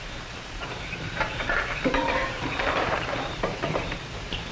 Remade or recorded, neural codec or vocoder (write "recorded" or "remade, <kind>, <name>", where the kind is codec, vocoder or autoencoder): remade, vocoder, BigVGAN v2